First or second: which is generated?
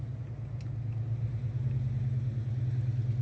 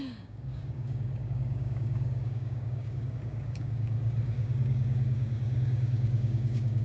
second